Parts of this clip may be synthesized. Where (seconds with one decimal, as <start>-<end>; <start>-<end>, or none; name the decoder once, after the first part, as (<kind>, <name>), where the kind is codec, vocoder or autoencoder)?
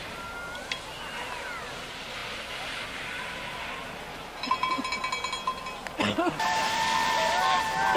none